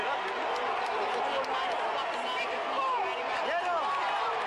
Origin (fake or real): real